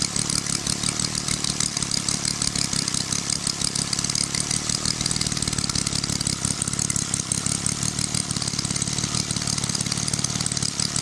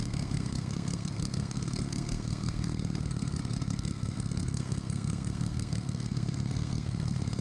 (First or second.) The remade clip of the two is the second